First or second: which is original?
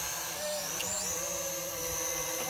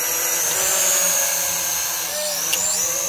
second